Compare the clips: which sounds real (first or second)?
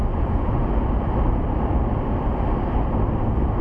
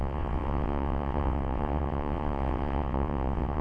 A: first